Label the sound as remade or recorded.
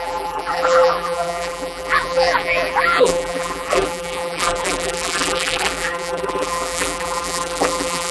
remade